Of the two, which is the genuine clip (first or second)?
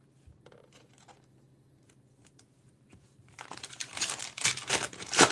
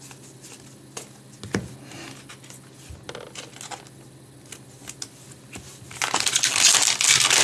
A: second